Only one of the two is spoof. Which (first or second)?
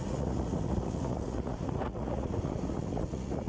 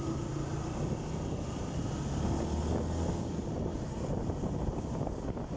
first